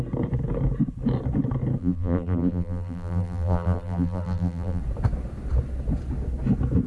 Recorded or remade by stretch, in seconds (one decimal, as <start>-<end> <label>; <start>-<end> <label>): 0.0-1.8 recorded; 1.8-4.8 remade; 4.8-6.9 recorded